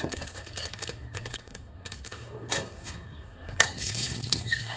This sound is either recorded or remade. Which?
remade